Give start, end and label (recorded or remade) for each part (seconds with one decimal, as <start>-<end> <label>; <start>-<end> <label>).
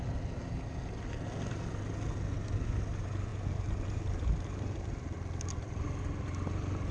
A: 0.0-6.9 recorded